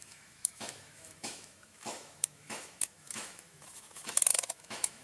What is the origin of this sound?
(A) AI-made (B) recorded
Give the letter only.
A